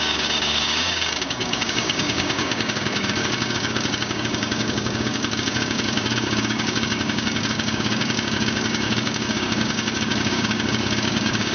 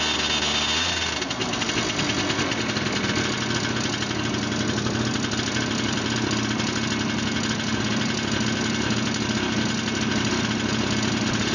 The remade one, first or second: first